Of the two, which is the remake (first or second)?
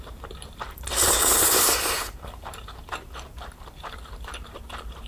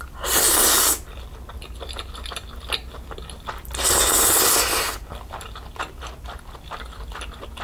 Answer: first